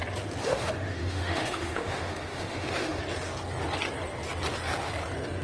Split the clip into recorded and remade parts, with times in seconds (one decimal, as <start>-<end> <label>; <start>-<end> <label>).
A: 0.0-0.4 recorded; 0.4-3.0 remade; 3.0-5.4 recorded